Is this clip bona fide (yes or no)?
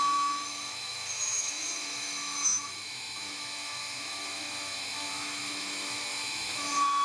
no